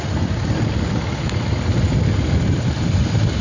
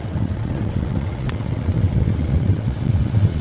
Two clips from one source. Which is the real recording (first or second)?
first